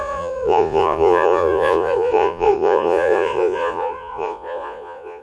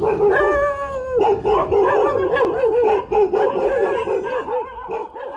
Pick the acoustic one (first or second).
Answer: second